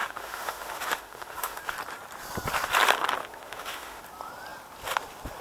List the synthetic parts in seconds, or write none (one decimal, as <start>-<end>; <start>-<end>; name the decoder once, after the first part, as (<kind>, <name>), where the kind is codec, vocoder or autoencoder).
0.0-1.6 (autoencoder, DAC-VAE); 3.2-4.0